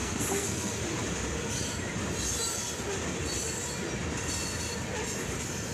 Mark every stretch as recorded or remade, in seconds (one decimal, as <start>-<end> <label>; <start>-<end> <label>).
0.0-0.8 remade; 0.8-5.7 recorded